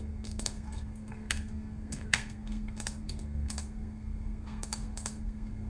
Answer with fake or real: fake